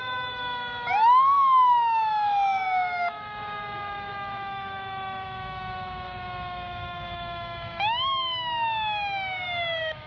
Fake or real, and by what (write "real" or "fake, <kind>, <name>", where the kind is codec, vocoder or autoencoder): fake, autoencoder, DAC-VAE